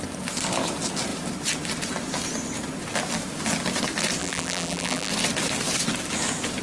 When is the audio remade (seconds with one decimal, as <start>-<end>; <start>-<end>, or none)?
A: 4.2-5.1